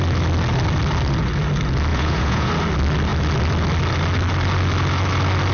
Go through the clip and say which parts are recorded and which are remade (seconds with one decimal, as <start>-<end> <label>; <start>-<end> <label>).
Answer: 0.0-1.9 recorded; 1.9-2.5 remade; 2.5-5.5 recorded